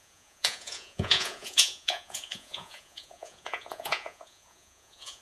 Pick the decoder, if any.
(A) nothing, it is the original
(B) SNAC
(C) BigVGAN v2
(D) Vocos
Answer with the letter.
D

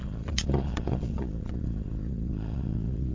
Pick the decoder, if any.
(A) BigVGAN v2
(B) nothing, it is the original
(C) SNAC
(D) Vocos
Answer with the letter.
D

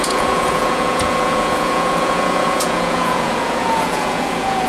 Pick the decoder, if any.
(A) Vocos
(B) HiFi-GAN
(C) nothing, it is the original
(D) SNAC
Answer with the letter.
A